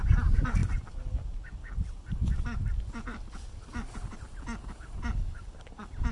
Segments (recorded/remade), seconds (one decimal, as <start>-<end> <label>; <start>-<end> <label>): 0.0-6.1 recorded